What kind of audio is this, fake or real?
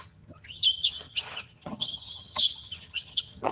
fake